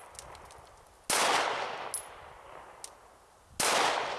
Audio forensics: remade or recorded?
recorded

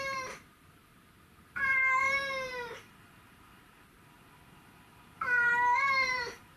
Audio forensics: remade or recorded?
remade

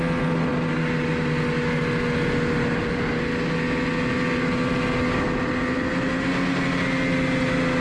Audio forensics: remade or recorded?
recorded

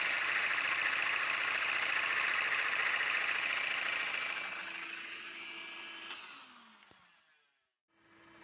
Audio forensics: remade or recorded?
recorded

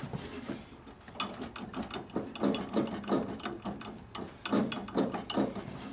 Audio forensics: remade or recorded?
recorded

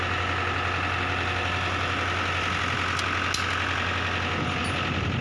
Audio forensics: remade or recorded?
recorded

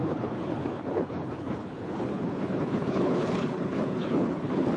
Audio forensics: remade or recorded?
remade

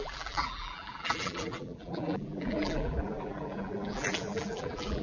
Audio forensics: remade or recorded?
remade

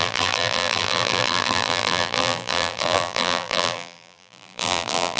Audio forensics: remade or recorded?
remade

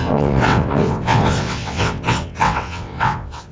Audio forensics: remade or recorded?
remade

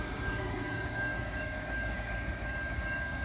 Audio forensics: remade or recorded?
remade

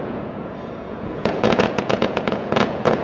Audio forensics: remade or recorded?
remade